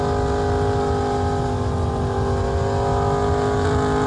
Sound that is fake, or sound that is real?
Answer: real